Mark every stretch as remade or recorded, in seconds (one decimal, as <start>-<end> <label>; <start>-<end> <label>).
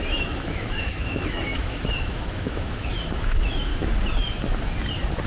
0.0-3.7 remade; 3.7-5.3 recorded